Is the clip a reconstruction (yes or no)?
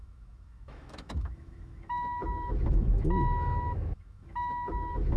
yes